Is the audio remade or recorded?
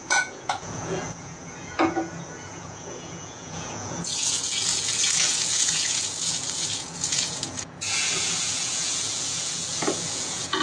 remade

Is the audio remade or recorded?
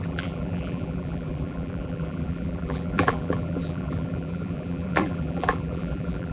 remade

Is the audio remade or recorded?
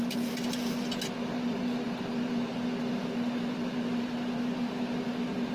recorded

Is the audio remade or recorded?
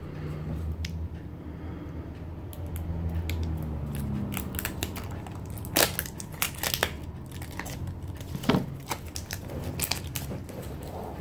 recorded